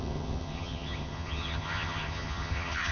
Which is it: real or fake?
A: fake